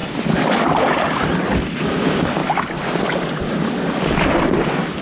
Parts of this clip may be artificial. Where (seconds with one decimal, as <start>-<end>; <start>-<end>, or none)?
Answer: none

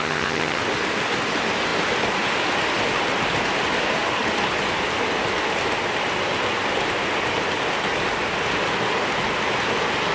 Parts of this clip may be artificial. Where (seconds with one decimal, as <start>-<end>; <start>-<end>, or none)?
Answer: 0.0-0.6

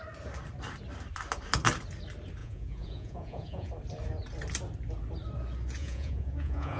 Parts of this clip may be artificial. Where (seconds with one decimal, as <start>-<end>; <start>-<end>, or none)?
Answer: 2.4-3.7; 5.8-6.8

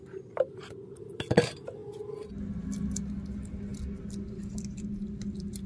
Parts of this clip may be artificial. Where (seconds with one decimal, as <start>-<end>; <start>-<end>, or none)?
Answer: none

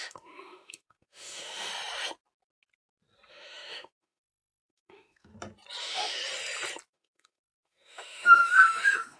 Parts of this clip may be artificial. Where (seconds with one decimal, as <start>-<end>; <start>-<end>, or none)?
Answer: 0.0-1.7; 3.3-5.3; 5.8-6.2; 6.9-9.2